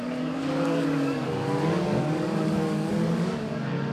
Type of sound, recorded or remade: remade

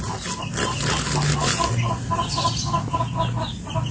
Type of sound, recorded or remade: recorded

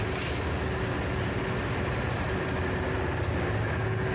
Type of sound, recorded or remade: recorded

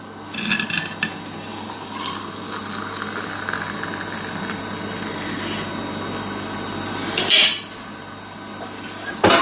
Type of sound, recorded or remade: recorded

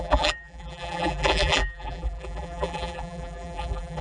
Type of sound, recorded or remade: remade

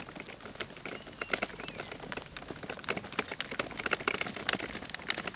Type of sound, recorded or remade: recorded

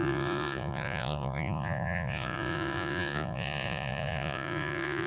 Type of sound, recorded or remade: remade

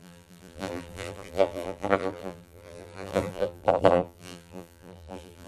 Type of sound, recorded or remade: remade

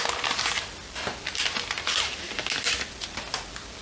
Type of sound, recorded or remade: recorded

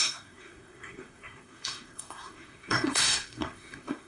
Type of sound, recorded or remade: remade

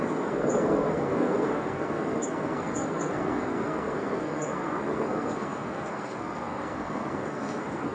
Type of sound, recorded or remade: remade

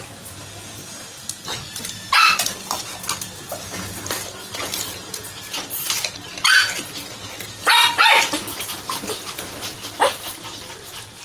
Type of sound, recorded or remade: recorded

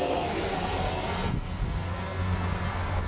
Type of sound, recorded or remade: remade